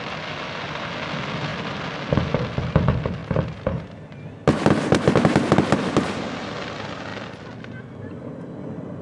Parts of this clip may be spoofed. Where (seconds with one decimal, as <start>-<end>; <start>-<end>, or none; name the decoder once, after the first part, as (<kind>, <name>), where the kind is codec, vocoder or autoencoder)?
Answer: none